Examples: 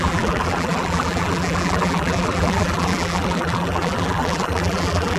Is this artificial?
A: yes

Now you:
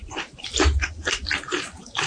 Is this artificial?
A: yes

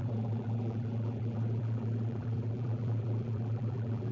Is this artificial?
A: yes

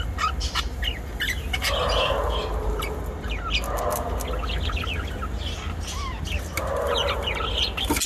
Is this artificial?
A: no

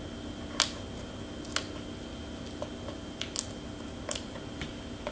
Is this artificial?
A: no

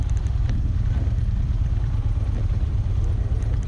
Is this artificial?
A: yes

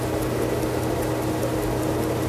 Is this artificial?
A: no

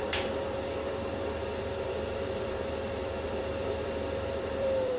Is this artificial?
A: yes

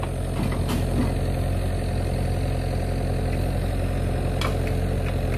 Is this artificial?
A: no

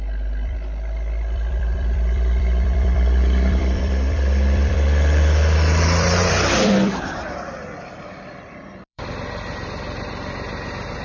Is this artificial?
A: yes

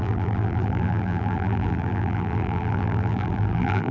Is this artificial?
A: yes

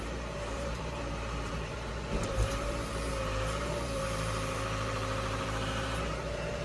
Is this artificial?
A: yes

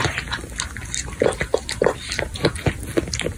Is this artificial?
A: yes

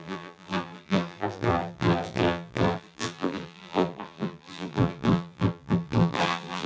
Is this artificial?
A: yes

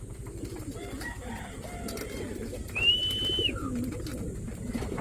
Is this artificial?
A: no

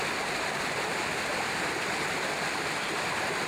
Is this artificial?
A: no